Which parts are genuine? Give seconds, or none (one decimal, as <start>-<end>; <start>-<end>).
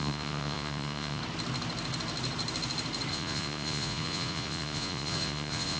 1.2-3.1